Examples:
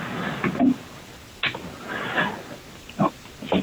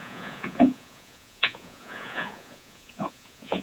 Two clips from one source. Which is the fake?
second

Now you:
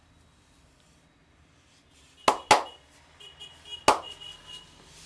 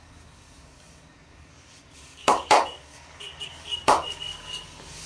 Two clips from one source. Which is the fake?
second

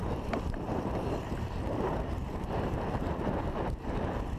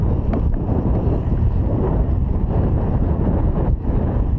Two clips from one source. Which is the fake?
first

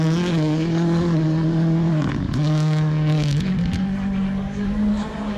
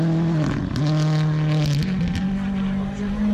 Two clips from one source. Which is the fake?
first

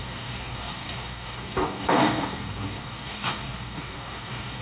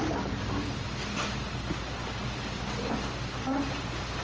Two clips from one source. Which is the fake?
first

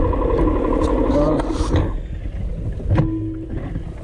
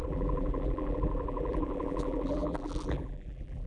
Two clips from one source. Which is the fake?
second